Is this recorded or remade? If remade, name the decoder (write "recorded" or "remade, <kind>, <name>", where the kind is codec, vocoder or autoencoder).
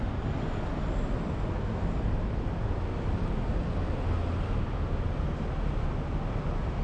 recorded